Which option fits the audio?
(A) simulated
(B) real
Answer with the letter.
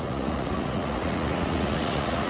A